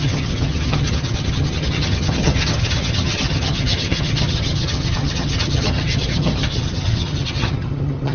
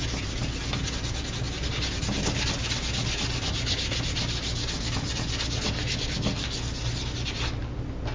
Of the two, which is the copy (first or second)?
first